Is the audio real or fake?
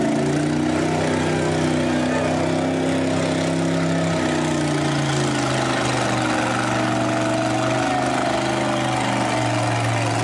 real